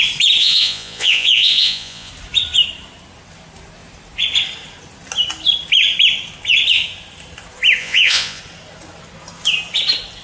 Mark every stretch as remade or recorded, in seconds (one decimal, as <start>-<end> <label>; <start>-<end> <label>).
0.0-0.4 recorded; 0.4-2.1 remade; 2.1-7.8 recorded; 7.8-8.4 remade; 8.4-10.2 recorded